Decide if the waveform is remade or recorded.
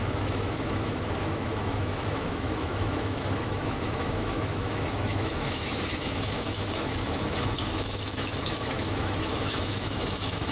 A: remade